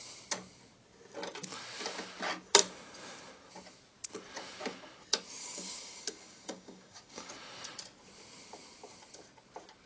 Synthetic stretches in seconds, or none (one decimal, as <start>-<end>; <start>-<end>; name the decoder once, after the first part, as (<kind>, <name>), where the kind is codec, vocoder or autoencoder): 5.4-7.3 (codec, DAC)

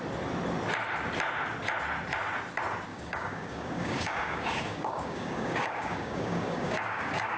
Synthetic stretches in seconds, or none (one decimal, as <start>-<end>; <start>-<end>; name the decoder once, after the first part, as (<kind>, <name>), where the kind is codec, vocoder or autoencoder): 2.9-7.4 (codec, DAC)

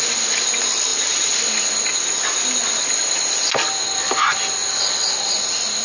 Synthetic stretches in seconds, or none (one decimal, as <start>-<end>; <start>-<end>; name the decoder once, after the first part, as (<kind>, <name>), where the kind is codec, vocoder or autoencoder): none

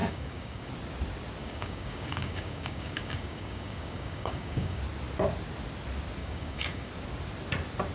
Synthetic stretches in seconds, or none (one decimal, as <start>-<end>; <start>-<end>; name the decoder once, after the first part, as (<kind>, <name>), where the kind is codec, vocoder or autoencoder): 0.0-0.7 (codec, DAC); 1.4-4.8; 6.2-6.9

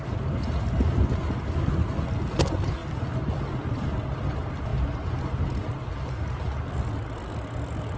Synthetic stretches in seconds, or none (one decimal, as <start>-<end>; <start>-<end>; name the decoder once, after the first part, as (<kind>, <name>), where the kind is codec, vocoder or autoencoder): none

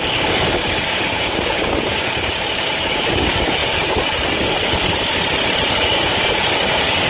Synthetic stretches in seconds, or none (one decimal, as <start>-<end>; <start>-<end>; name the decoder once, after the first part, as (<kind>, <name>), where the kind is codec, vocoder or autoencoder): 0.0-5.1 (codec, DAC); 5.7-7.1